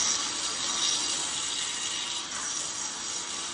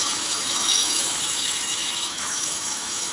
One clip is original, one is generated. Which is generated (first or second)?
second